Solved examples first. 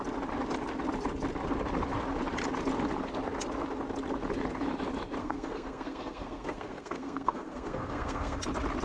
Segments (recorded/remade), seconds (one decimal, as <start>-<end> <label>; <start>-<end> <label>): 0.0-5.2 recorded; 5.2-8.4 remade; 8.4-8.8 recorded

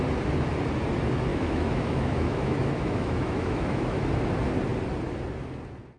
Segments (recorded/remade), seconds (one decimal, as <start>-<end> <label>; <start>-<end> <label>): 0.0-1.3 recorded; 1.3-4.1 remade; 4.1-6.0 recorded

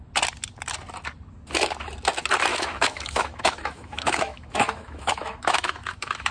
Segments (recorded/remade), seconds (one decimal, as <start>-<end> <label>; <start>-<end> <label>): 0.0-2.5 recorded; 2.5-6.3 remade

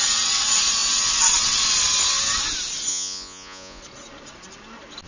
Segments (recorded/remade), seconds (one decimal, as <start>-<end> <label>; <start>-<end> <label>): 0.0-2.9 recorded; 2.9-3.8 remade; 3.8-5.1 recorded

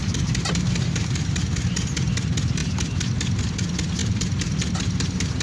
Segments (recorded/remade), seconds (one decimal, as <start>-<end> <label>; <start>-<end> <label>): 0.0-4.0 recorded; 4.0-4.7 remade; 4.7-5.4 recorded

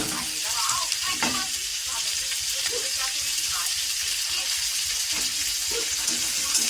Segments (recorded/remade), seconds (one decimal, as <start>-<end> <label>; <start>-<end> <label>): 0.0-0.8 recorded; 0.8-6.7 remade